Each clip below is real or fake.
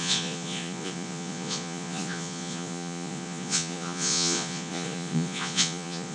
fake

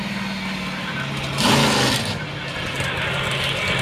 real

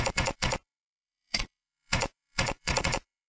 fake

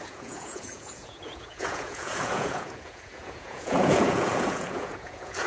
fake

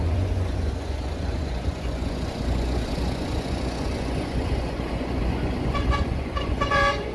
fake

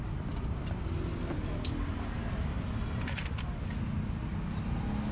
real